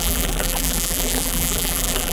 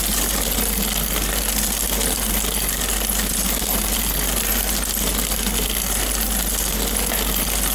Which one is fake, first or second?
first